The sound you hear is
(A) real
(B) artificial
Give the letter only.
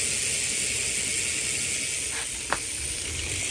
A